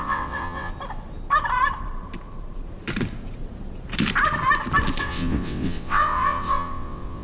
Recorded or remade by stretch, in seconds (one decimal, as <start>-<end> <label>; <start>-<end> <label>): 0.0-0.7 remade; 0.7-5.0 recorded; 5.0-7.2 remade

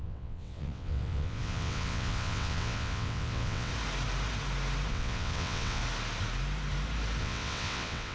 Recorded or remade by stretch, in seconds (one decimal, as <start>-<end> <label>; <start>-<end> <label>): 0.0-3.7 remade; 3.7-4.9 recorded; 4.9-5.8 remade; 5.8-7.2 recorded; 7.2-8.1 remade

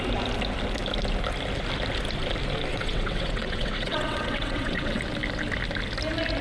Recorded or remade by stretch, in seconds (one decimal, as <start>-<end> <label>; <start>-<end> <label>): 0.0-2.7 recorded; 2.7-5.0 remade; 5.0-6.4 recorded

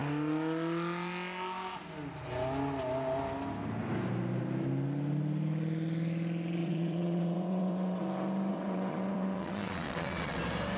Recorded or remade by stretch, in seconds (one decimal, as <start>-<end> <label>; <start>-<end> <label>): 0.0-6.6 recorded; 6.6-8.0 remade; 8.0-8.5 recorded; 8.5-10.4 remade; 10.4-10.8 recorded

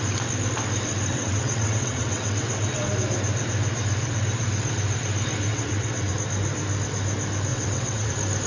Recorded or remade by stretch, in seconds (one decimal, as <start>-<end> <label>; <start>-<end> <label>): 0.0-1.1 recorded; 1.1-2.9 remade; 2.9-5.5 recorded; 5.5-6.1 remade; 6.1-7.5 recorded; 7.5-8.1 remade; 8.1-8.5 recorded